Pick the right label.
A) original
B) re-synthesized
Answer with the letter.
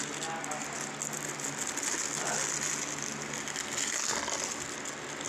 A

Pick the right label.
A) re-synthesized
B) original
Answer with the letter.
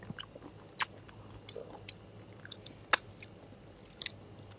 B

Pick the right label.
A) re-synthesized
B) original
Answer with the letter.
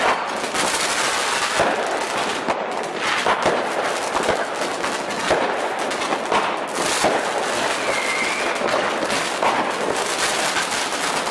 B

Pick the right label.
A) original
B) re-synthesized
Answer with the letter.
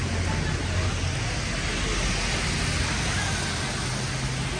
A